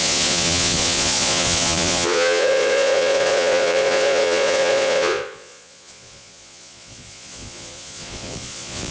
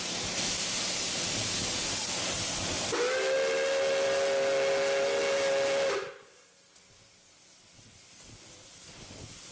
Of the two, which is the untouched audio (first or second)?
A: second